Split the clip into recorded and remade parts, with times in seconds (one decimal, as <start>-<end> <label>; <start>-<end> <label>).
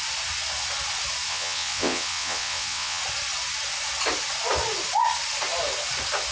0.0-1.3 recorded; 1.3-3.0 remade; 3.0-6.3 recorded